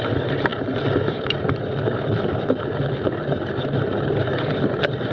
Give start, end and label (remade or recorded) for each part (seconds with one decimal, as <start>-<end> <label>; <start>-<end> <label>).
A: 0.0-5.1 remade